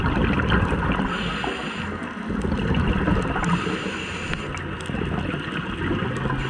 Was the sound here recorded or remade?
recorded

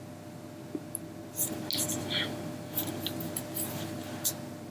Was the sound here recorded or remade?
recorded